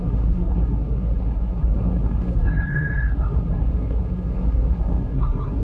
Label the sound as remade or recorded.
remade